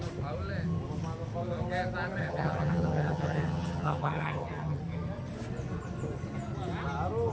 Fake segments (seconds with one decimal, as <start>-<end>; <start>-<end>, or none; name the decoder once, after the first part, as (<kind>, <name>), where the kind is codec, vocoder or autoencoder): 2.2-4.8 (vocoder, HiFi-GAN)